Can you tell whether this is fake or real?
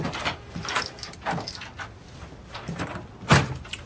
real